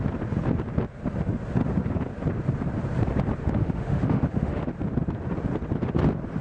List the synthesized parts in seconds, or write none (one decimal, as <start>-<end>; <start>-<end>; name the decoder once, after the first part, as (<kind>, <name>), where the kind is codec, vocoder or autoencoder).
3.4-4.7 (autoencoder, DAC-VAE)